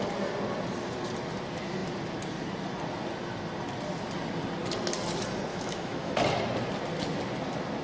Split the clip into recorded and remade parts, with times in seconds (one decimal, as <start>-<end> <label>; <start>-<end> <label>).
0.0-5.5 recorded; 5.5-6.1 remade; 6.1-7.8 recorded